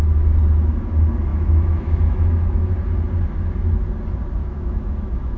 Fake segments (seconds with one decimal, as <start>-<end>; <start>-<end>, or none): 1.3-2.7; 4.4-5.4